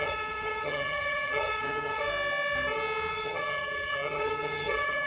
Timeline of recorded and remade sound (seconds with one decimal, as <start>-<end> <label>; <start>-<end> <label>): 0.0-2.0 remade; 2.0-3.1 recorded; 3.1-5.1 remade